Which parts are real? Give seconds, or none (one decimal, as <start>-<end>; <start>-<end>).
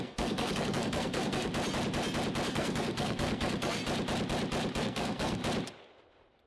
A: 1.5-2.5; 3.8-4.8; 5.4-6.5